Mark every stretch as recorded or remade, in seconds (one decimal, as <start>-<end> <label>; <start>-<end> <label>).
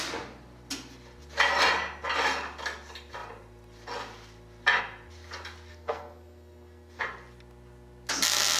0.0-5.7 recorded; 5.7-7.0 remade; 7.0-8.6 recorded